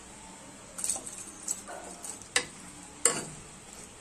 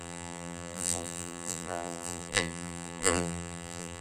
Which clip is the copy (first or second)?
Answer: second